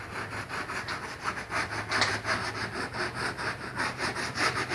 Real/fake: real